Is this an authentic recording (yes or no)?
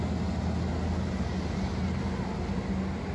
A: yes